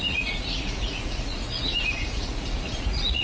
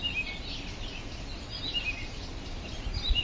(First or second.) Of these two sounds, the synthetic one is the first